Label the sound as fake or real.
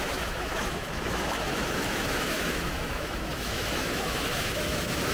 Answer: fake